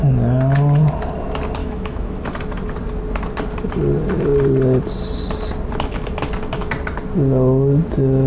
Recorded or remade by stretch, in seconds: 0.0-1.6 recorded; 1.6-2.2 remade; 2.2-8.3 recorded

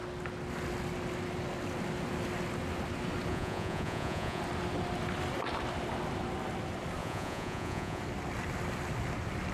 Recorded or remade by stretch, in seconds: 0.0-3.3 recorded; 3.3-4.4 remade; 4.4-7.0 recorded; 7.0-8.0 remade; 8.0-9.5 recorded

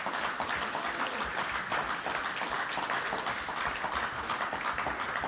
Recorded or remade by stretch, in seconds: 0.0-5.3 recorded

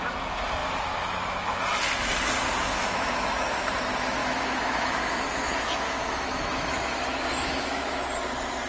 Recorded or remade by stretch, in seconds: 0.0-0.6 recorded; 0.6-1.6 remade; 1.6-2.7 recorded; 2.7-3.7 remade; 3.7-4.2 recorded; 4.2-8.0 remade; 8.0-8.7 recorded

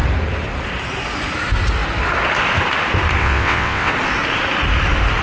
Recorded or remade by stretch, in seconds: 0.0-3.2 recorded; 3.2-3.9 remade; 3.9-5.2 recorded

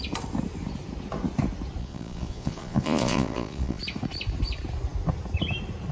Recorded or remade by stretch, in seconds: 0.0-1.8 recorded; 1.8-3.8 remade; 3.8-5.9 recorded